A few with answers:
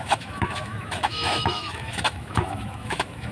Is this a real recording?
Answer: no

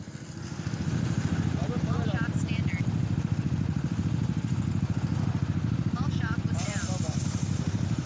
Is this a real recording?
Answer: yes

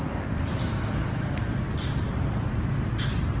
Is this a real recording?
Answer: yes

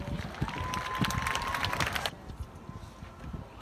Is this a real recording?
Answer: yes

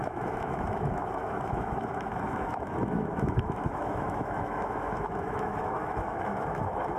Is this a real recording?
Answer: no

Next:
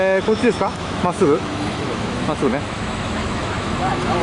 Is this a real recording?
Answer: no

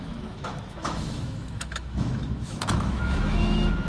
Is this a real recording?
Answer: no